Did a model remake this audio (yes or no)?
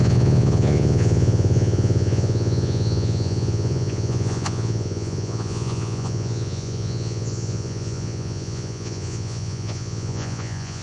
yes